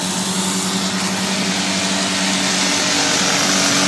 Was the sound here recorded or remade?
recorded